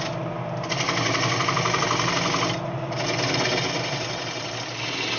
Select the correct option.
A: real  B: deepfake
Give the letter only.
A